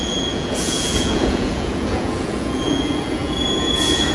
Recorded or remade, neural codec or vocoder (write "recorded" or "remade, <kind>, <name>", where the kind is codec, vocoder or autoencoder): remade, vocoder, Vocos